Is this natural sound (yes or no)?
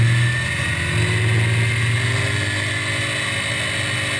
yes